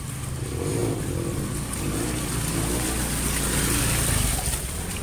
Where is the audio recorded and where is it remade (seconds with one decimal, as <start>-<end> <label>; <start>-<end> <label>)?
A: 0.0-5.0 recorded